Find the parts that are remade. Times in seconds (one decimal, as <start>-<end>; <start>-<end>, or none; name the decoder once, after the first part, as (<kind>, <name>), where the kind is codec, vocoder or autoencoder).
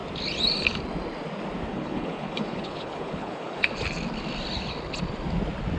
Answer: 1.7-3.7 (codec, HILCodec)